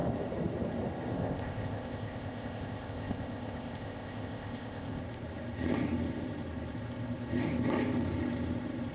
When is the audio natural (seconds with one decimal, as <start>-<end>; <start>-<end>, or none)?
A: 0.0-1.1; 5.0-8.9